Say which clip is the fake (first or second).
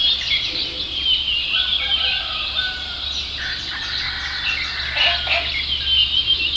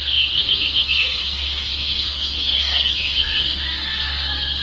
second